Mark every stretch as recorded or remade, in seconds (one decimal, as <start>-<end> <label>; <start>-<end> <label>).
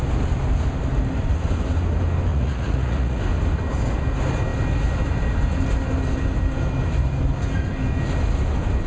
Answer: 0.0-2.3 recorded; 2.3-3.2 remade; 3.2-8.9 recorded